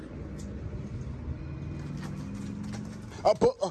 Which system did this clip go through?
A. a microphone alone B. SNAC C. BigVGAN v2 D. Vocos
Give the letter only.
A